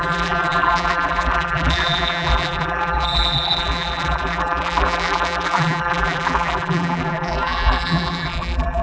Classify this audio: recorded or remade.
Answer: remade